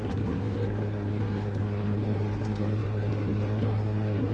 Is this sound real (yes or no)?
no